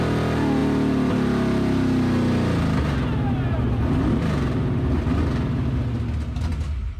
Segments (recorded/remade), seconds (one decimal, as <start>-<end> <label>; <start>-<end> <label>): 0.0-7.0 recorded